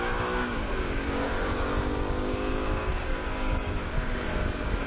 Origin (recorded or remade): remade